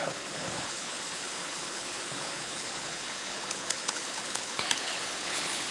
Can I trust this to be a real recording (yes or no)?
no